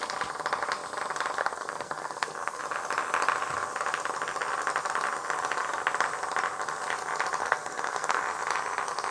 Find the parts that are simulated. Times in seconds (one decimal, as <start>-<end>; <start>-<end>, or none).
1.4-2.6; 7.4-8.2